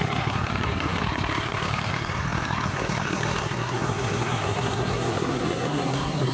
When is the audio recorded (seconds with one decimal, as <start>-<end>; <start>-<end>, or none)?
none